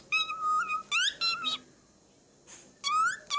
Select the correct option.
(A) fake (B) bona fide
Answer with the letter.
B